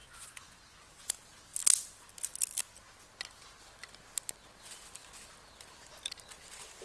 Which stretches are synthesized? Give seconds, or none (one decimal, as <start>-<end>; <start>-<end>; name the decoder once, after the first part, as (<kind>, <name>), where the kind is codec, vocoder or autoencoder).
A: 0.0-1.1 (vocoder, Vocos)